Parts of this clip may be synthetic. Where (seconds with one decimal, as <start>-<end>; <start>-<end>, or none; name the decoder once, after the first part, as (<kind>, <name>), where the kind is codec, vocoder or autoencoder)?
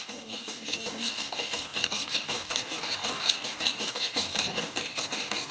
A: 0.0-5.5 (codec, DAC)